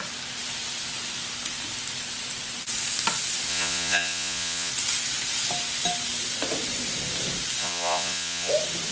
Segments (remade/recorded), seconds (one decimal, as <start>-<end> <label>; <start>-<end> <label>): 0.0-3.5 recorded; 3.5-4.7 remade; 4.7-7.6 recorded; 7.6-8.5 remade; 8.5-8.9 recorded